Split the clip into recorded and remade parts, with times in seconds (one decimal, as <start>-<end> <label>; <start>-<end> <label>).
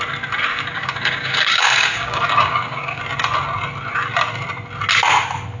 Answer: 0.0-0.5 recorded; 0.5-3.0 remade; 3.0-5.6 recorded